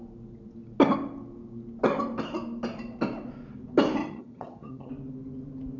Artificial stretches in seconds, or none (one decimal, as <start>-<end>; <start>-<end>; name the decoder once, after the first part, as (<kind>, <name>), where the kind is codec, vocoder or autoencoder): 4.0-4.9 (vocoder, HiFi-GAN)